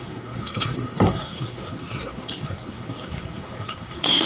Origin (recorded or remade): remade